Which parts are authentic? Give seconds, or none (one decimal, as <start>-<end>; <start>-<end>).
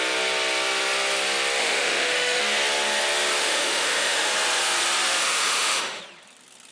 0.0-1.6; 2.4-3.4; 4.3-5.2; 6.0-6.7